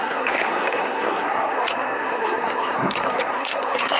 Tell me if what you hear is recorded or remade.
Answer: remade